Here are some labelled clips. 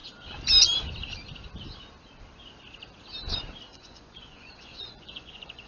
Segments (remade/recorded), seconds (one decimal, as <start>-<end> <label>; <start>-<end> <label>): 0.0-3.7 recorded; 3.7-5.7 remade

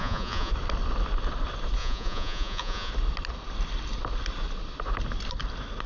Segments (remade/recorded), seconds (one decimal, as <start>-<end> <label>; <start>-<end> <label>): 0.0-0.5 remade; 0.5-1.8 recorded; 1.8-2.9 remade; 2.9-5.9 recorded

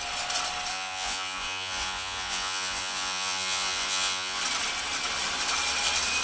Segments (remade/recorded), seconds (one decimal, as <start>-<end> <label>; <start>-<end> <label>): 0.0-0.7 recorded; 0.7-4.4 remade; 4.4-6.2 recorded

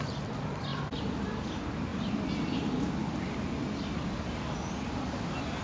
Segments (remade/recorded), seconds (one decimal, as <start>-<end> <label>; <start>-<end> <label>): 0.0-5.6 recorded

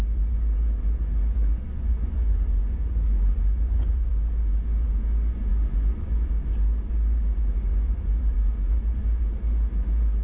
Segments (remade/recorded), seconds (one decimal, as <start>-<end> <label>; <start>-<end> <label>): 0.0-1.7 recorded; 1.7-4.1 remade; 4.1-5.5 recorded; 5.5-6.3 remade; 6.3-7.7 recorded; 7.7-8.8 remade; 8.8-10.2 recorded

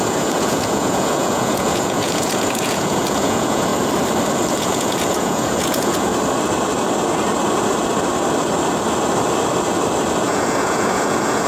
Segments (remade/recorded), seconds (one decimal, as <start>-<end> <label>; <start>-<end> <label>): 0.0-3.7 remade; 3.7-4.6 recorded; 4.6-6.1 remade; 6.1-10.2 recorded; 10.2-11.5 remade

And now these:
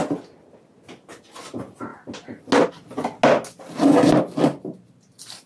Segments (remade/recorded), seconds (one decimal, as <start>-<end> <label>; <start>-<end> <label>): 0.0-5.5 recorded

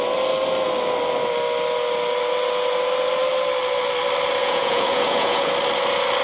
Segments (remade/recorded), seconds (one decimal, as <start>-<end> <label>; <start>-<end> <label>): 0.0-4.4 recorded; 4.4-5.5 remade; 5.5-6.2 recorded